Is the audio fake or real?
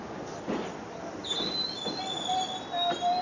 real